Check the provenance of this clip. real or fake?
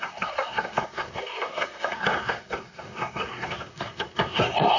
fake